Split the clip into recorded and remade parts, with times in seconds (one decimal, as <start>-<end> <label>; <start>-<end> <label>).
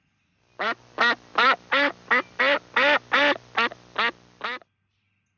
0.0-5.4 recorded